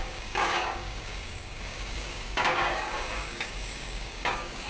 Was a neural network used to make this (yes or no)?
yes